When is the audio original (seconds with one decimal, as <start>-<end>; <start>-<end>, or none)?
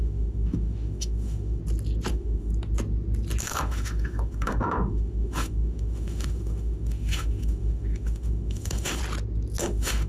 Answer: 1.6-2.1; 2.5-3.4; 9.0-9.6